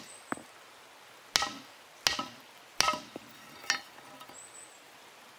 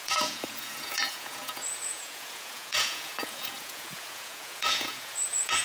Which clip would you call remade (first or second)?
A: second